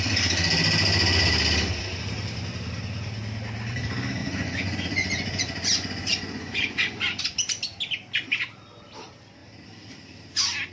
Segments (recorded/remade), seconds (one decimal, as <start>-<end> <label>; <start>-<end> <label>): 0.0-4.2 recorded; 4.2-7.2 remade; 7.2-10.7 recorded